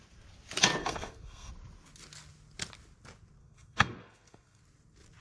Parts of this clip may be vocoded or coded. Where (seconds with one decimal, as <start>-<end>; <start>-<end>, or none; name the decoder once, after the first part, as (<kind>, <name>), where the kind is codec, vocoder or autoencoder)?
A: 0.8-1.5 (codec, SNAC); 3.4-4.6